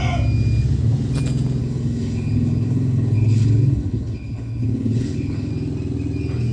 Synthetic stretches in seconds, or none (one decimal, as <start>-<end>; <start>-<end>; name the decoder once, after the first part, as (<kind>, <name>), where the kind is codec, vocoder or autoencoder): 1.6-5.5 (codec, HILCodec)